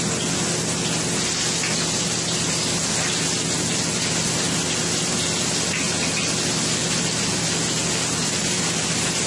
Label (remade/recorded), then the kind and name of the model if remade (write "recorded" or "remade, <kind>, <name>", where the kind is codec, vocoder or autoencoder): recorded